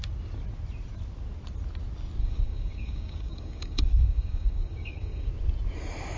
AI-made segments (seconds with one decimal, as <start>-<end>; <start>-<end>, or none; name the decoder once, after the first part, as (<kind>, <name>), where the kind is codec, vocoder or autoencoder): 2.2-5.3 (codec, DAC)